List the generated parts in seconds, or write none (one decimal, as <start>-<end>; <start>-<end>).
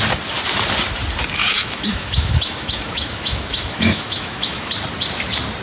1.4-4.7